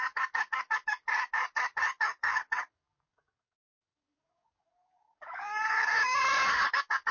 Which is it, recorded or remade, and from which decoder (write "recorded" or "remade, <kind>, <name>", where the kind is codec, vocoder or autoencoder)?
remade, codec, DAC